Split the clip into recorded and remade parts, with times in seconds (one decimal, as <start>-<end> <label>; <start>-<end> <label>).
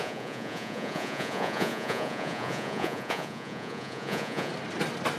0.0-4.5 remade; 4.5-5.2 recorded